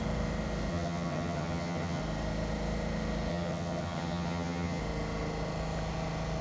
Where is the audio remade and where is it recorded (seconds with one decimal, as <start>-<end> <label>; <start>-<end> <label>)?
0.0-0.7 recorded; 0.7-2.0 remade; 2.0-3.3 recorded; 3.3-4.8 remade; 4.8-6.4 recorded